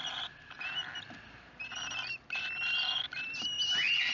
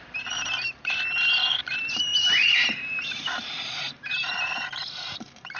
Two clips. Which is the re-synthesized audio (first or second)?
second